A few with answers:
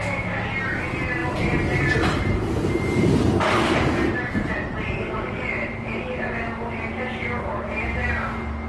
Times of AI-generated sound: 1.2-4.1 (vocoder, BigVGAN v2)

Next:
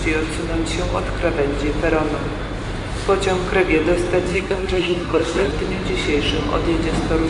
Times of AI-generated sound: 4.3-5.5 (codec, SNAC)

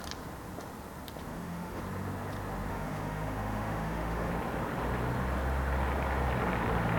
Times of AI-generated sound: 1.3-1.8 (autoencoder, DAC-VAE); 2.7-4.3

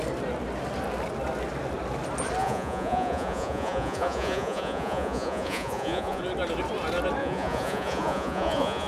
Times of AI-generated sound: 2.4-6.2 (vocoder, Vocos); 7.2-8.9

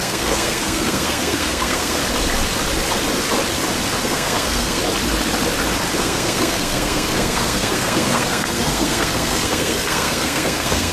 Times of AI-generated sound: 0.0-2.0 (codec, SNAC); 4.0-4.8; 6.0-10.9

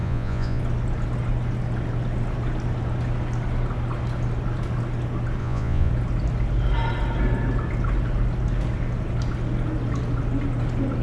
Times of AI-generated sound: 0.0-0.6 (vocoder, Vocos); 5.4-5.9

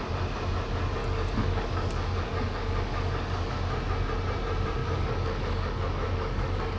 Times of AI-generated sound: 1.0-3.5 (codec, DAC); 4.8-6.8